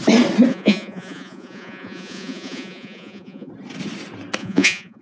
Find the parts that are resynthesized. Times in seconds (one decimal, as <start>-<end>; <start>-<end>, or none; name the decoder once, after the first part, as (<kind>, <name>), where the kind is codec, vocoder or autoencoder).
0.5-3.5 (vocoder, Vocos); 4.4-5.0